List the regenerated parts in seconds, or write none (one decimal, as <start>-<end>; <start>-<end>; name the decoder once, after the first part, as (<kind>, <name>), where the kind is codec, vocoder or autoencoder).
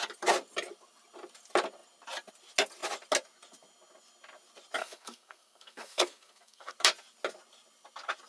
4.8-6.7 (codec, SNAC)